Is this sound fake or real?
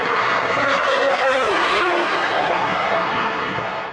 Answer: fake